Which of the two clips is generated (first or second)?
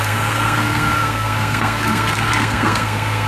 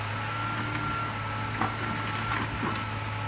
first